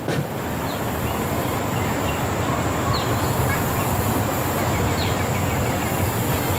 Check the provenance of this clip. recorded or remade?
recorded